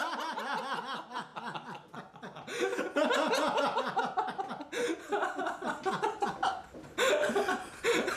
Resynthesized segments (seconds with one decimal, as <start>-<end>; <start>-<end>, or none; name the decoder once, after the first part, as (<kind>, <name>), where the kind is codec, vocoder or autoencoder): none